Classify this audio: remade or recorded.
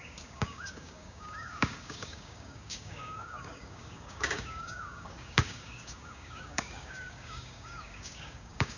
remade